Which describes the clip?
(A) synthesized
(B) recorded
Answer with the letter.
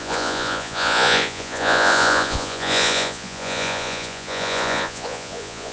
A